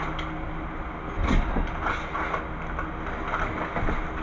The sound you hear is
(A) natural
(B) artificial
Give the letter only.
A